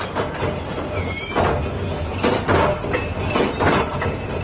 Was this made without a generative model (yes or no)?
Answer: yes